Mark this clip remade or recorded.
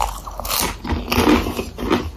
recorded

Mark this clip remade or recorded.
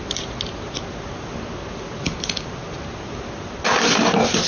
recorded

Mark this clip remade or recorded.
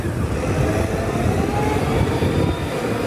recorded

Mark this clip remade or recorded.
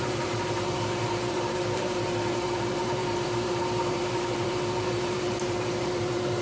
remade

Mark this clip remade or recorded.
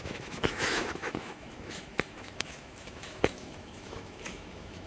remade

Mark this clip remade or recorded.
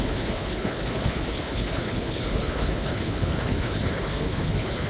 remade